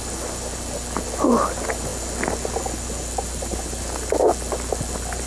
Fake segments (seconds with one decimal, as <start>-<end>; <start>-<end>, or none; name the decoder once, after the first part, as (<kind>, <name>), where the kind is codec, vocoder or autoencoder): none